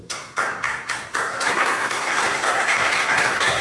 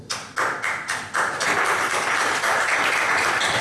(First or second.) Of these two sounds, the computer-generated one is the first